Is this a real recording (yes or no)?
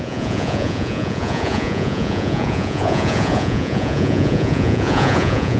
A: no